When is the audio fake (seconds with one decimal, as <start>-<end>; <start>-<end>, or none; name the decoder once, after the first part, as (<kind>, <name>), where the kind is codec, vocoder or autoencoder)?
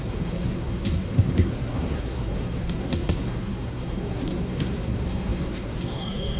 0.0-6.4 (codec, SNAC)